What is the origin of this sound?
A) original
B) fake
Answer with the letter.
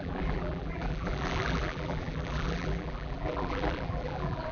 B